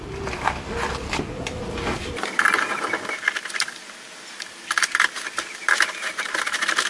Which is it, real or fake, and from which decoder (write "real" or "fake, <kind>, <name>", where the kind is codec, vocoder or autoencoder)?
real